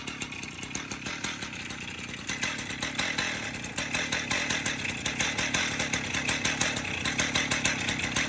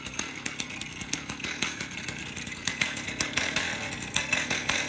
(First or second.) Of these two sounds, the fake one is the second